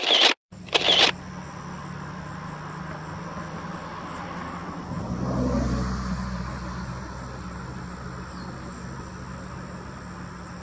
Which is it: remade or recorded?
recorded